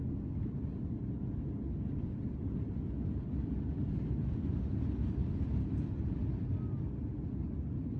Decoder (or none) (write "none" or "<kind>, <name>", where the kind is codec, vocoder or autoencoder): none